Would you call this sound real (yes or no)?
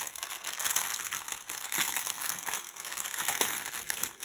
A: no